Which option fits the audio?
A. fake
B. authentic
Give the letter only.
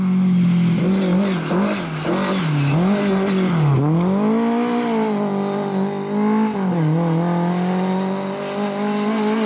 B